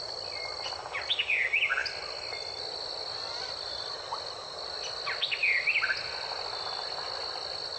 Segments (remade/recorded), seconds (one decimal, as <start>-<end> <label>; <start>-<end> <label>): 0.0-7.8 recorded